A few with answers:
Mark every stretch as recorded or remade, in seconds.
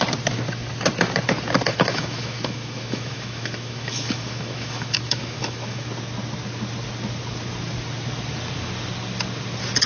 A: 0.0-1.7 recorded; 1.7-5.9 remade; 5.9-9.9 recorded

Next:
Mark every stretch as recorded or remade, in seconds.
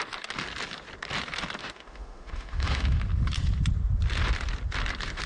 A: 0.0-1.6 recorded; 1.6-3.0 remade; 3.0-5.3 recorded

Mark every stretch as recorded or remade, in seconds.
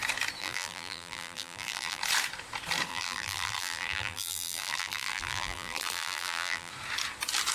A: 0.0-0.4 recorded; 0.4-2.0 remade; 2.0-2.9 recorded; 2.9-6.7 remade; 6.7-7.5 recorded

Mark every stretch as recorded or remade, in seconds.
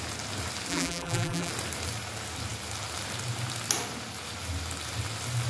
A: 0.0-0.7 recorded; 0.7-1.5 remade; 1.5-5.5 recorded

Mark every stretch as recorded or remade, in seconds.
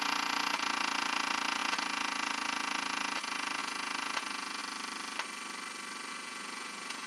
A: 0.0-4.6 remade; 4.6-6.1 recorded; 6.1-7.1 remade